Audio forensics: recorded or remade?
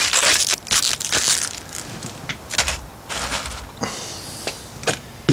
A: recorded